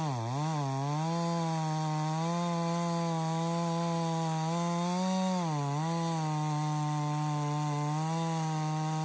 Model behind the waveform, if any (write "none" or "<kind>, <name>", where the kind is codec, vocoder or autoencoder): none